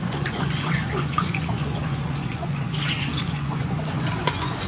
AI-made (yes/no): yes